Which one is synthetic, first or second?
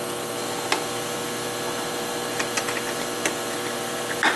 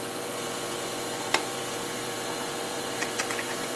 second